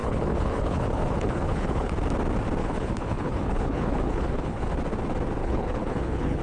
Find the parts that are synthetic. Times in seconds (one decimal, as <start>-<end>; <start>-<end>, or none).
0.0-1.9; 2.6-4.7; 5.4-6.4